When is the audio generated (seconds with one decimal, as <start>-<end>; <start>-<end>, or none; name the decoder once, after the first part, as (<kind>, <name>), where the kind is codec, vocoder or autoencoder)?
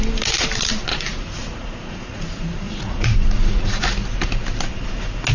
0.9-3.8 (vocoder, Vocos)